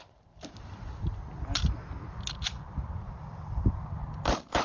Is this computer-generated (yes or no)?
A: yes